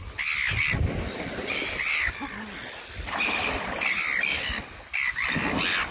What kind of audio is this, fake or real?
real